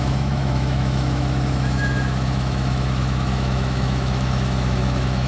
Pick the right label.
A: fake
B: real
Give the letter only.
A